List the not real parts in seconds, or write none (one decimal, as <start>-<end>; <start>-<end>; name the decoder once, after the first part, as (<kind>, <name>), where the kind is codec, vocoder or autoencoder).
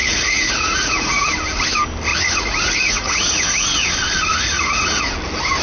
0.0-1.3 (vocoder, Vocos); 2.1-3.9; 4.3-5.1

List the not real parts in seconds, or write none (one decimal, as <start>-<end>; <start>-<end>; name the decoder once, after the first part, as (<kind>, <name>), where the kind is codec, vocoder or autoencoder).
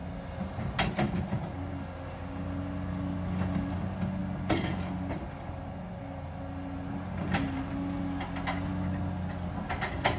none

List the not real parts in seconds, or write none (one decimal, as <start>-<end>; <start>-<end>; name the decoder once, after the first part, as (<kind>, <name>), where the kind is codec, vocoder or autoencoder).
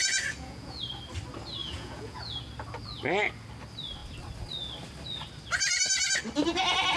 0.0-0.8 (vocoder, Vocos); 1.6-2.4